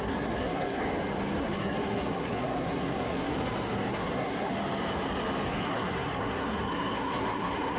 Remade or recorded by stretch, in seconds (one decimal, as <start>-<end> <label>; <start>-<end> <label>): 0.0-0.8 remade; 0.8-1.4 recorded; 1.4-3.3 remade; 3.3-3.9 recorded; 3.9-4.5 remade; 4.5-5.5 recorded; 5.5-7.8 remade

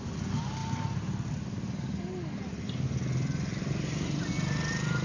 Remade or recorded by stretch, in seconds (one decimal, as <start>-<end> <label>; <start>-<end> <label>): 0.0-5.0 recorded

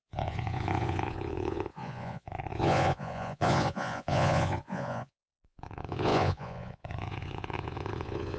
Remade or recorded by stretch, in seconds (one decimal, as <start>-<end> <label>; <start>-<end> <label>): 0.0-8.4 remade

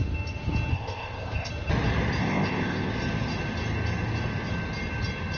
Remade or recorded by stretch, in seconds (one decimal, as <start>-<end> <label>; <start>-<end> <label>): 0.0-0.7 recorded; 0.7-1.5 remade; 1.5-2.2 recorded; 2.2-2.9 remade; 2.9-5.4 recorded

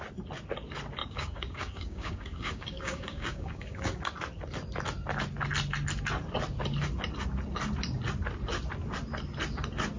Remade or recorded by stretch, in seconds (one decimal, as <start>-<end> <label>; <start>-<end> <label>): 0.0-1.0 recorded; 1.0-4.0 remade; 4.0-10.0 recorded

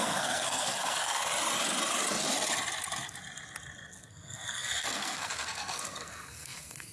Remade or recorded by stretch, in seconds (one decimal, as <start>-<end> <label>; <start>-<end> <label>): 0.0-1.3 remade; 1.3-4.1 recorded; 4.1-6.9 remade

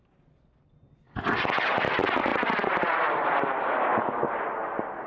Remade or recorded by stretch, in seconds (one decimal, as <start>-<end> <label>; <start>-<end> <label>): 0.0-5.1 recorded

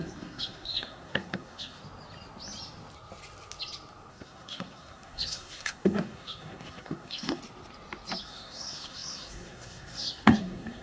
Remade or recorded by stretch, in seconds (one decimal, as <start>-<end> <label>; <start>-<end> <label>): 0.0-1.8 remade; 1.8-4.1 recorded; 4.1-7.4 remade; 7.4-8.2 recorded; 8.2-10.8 remade